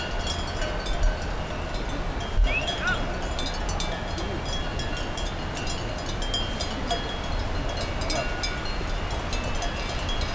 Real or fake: real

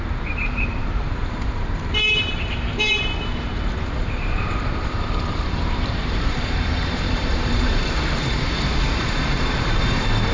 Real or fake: fake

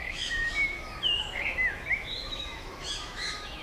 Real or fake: fake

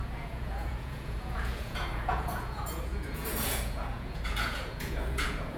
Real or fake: fake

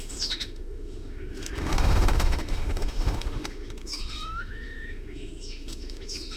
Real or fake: fake